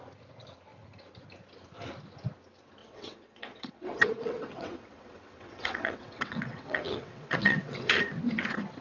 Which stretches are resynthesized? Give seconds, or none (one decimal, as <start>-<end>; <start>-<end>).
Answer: 2.8-8.0